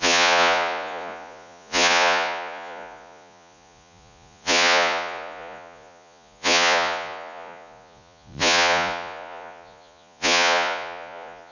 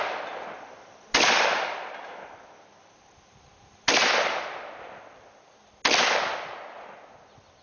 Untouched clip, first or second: second